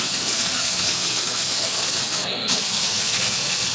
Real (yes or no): no